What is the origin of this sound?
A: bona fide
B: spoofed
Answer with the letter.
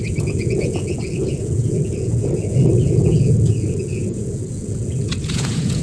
B